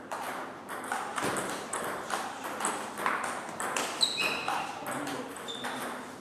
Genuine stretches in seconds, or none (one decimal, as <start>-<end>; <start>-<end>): 0.0-1.1; 4.7-6.2